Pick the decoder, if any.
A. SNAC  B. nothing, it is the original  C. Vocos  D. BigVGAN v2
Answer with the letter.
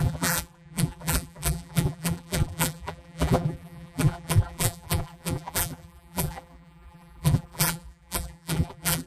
D